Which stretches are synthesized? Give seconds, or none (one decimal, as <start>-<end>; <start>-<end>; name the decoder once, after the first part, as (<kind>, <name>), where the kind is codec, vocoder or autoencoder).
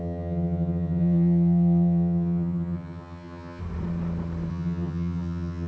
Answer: 0.0-3.6 (vocoder, HiFi-GAN); 4.5-5.7